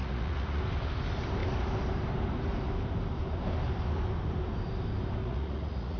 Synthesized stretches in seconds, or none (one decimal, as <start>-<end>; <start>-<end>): 0.0-0.6; 5.2-6.0